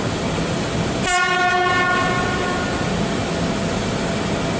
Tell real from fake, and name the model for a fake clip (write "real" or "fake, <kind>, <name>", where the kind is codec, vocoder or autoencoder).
real